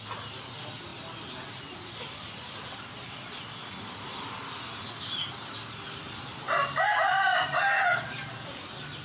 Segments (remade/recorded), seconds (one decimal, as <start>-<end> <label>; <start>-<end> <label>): 0.0-9.0 recorded